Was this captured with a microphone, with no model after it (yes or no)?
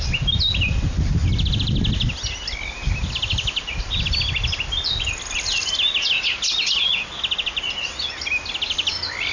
yes